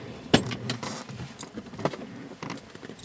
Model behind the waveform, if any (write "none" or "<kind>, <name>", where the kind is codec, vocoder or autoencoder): none